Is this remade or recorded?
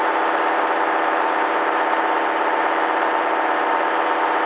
remade